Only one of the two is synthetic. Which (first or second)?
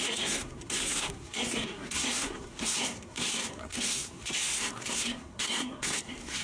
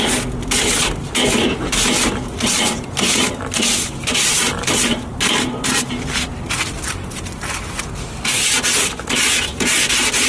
first